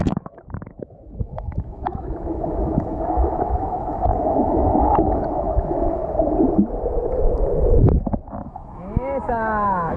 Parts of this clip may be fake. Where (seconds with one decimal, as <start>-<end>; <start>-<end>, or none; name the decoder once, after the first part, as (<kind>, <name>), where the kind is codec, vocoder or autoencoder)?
0.0-6.0 (autoencoder, DAC-VAE); 8.3-10.0